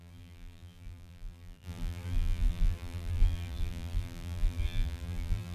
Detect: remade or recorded remade